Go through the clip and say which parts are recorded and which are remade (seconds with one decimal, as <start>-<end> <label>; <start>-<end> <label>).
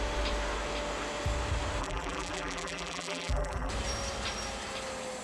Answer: 0.0-1.8 recorded; 1.8-3.7 remade; 3.7-5.2 recorded